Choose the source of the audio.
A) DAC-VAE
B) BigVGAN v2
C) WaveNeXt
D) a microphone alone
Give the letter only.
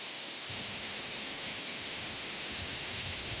A